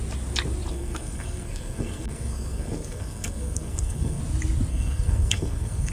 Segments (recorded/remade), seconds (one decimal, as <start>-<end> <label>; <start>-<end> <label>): 0.0-0.7 recorded; 0.7-4.2 remade; 4.2-4.7 recorded; 4.7-5.9 remade